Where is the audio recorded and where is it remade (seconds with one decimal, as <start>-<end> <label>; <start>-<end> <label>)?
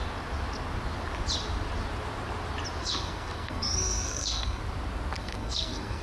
0.0-2.8 recorded; 2.8-4.6 remade; 4.6-5.2 recorded; 5.2-6.0 remade